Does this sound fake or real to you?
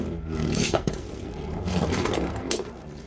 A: fake